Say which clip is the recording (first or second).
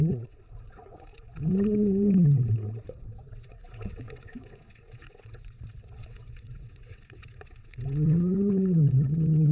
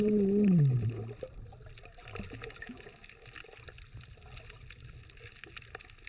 second